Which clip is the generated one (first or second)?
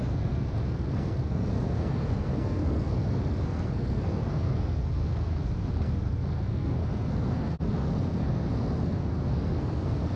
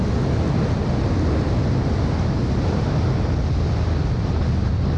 first